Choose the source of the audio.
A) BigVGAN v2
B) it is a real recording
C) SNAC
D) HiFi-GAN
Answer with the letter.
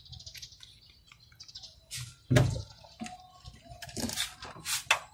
B